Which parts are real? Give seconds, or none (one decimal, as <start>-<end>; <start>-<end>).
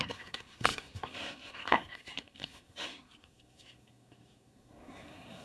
none